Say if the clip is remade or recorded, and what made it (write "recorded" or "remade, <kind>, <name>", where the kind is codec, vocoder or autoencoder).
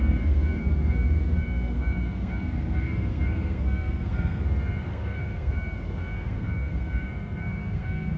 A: remade, codec, SNAC